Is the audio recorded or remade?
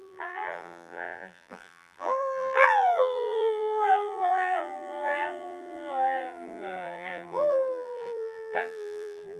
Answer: remade